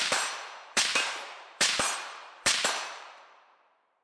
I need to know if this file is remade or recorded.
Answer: remade